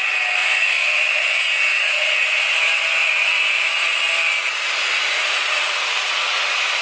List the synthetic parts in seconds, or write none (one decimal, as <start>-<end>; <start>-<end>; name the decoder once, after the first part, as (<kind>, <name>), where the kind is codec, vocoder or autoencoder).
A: 0.4-2.5 (vocoder, Vocos); 3.0-4.0; 4.8-6.8